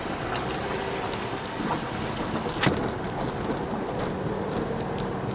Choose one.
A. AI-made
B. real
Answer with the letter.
B